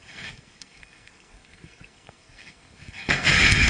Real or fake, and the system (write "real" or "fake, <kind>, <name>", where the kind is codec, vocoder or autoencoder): fake, codec, SNAC